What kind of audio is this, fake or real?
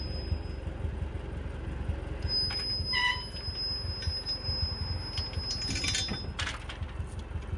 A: real